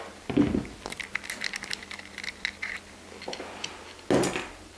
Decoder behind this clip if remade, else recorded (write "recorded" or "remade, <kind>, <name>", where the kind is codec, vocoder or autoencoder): recorded